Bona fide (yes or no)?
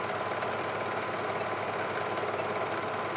yes